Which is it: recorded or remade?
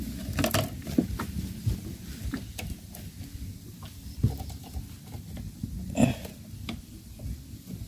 recorded